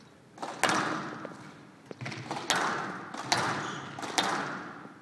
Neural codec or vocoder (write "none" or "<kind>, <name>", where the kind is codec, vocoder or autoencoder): none